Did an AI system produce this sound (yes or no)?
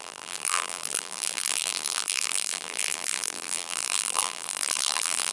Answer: yes